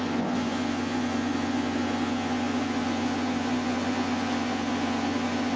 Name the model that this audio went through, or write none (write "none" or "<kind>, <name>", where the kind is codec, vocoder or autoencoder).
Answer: vocoder, Vocos